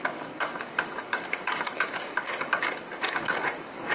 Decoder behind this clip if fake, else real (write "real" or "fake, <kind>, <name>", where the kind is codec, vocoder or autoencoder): fake, codec, DAC